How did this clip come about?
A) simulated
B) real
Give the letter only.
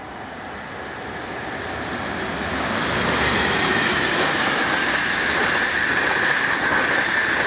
B